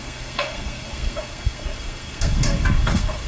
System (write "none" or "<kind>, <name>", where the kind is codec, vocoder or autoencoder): codec, SNAC